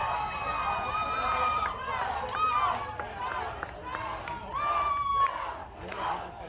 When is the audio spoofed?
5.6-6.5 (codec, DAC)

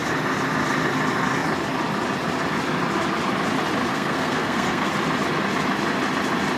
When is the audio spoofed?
3.9-4.9 (codec, SNAC)

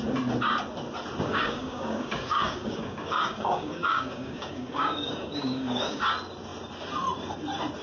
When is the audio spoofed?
1.3-6.0 (codec, DAC)

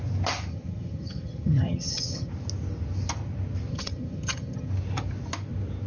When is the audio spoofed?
0.5-2.3 (vocoder, HiFi-GAN); 3.7-4.7

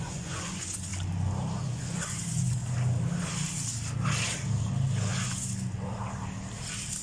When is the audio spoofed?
0.0-0.9 (vocoder, Vocos); 1.6-2.6

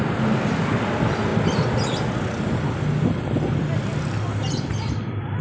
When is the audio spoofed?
none

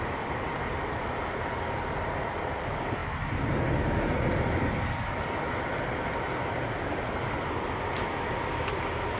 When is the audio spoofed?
none

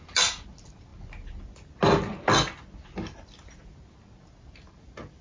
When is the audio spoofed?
none